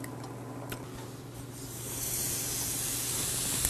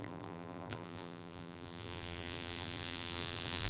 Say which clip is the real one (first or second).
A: first